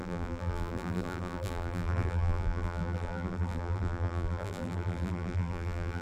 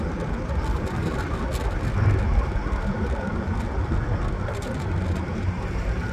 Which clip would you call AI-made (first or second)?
first